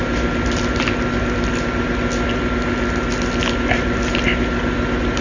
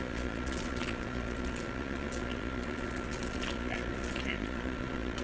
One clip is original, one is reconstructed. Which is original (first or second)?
first